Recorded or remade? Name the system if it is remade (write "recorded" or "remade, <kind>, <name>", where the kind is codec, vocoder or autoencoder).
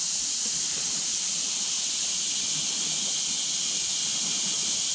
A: recorded